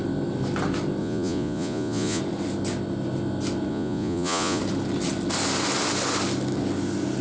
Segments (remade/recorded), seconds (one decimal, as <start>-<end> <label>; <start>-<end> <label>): 0.0-1.0 recorded; 1.0-2.2 remade; 2.2-3.7 recorded; 3.7-4.6 remade; 4.6-7.2 recorded